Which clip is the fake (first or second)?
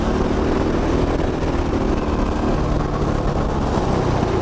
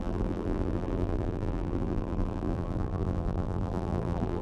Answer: second